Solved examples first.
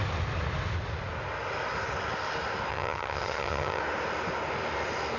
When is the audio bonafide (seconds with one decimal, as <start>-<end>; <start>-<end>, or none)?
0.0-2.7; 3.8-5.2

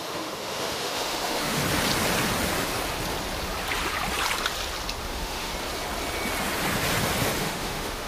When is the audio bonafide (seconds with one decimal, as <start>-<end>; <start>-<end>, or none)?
1.6-5.0; 5.5-7.4

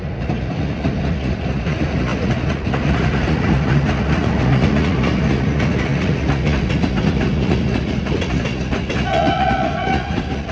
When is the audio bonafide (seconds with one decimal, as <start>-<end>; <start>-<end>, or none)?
none

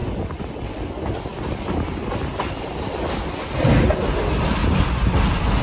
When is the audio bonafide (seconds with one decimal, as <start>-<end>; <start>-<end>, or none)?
0.7-5.6

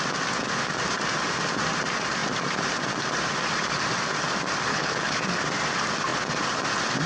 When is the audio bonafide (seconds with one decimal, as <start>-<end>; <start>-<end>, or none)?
0.0-4.7; 5.2-7.1

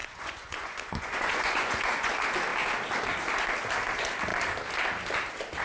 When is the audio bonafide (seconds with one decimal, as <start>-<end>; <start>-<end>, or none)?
2.1-5.6

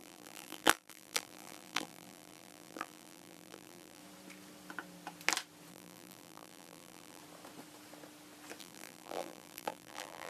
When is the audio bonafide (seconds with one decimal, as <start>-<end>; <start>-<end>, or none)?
4.0-5.7; 7.2-8.6